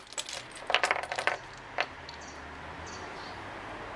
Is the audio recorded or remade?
recorded